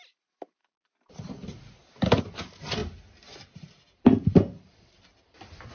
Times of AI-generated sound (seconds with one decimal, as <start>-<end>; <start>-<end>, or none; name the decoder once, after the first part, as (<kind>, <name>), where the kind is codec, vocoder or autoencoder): none